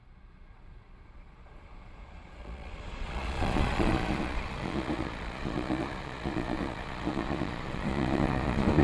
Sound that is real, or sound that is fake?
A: fake